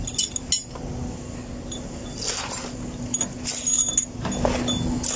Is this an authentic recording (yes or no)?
yes